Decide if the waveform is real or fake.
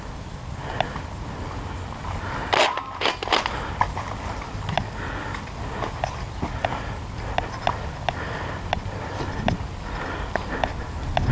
real